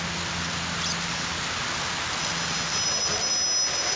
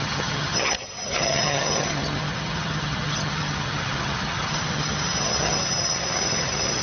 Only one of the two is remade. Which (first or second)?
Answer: second